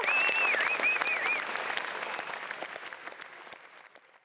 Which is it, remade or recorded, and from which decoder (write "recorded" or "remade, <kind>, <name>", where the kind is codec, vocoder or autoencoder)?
recorded